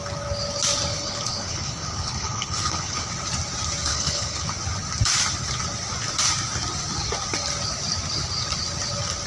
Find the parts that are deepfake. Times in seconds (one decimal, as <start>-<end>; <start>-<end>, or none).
0.9-3.1; 3.9-4.5